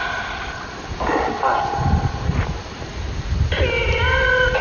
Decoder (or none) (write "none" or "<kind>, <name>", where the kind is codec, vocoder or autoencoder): none